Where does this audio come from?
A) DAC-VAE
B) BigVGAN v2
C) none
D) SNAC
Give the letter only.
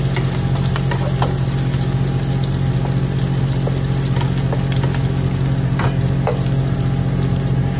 C